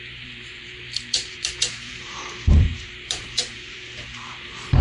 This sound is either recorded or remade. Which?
remade